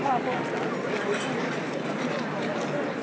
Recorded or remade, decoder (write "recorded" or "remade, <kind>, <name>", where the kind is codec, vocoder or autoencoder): recorded